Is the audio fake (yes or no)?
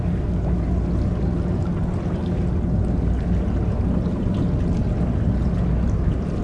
no